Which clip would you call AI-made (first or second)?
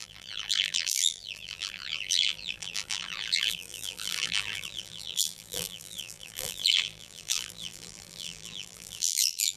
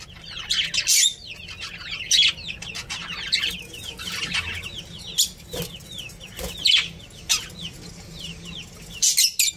first